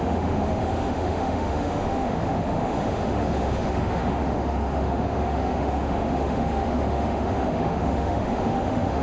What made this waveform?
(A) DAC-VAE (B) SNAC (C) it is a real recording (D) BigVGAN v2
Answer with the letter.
A